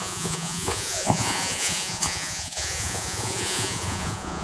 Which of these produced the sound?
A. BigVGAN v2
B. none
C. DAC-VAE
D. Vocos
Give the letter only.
D